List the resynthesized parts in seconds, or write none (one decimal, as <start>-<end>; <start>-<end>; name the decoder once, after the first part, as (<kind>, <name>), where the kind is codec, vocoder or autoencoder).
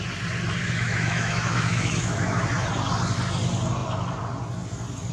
0.6-2.4 (autoencoder, DAC-VAE)